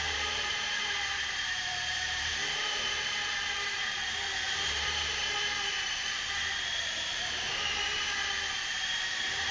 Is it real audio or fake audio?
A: fake